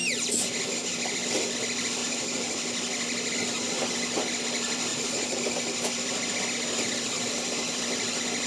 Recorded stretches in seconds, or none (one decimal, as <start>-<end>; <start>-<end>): 0.0-4.9; 5.4-8.5